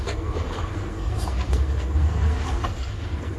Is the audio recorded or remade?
remade